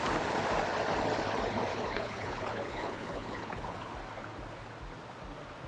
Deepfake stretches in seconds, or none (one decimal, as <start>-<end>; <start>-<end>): 1.7-3.9